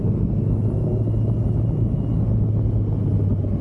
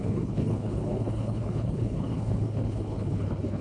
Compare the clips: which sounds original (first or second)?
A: first